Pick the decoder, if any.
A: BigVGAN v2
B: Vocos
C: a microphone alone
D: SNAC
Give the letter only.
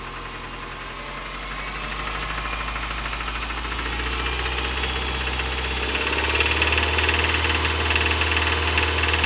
C